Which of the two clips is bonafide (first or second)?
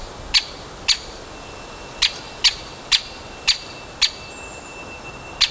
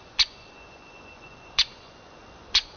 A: first